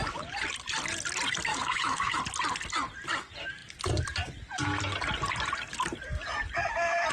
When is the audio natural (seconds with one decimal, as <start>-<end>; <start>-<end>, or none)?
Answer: 0.0-1.5; 2.2-7.1